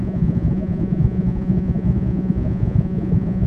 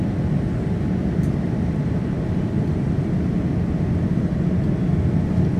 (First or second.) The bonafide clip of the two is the second